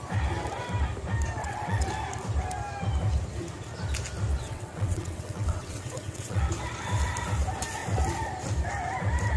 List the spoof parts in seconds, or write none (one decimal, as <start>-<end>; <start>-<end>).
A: 1.4-1.9; 4.3-6.4